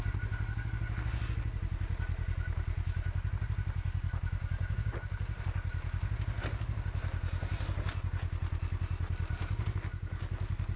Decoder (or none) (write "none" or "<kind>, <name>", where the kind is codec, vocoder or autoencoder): none